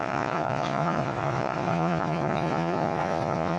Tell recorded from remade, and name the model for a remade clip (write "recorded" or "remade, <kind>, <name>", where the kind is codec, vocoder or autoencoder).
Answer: remade, vocoder, Vocos